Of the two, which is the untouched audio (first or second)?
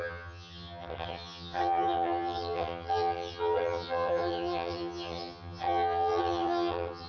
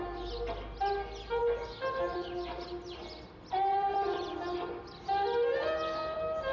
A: second